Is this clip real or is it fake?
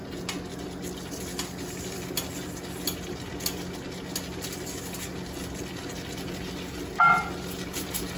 real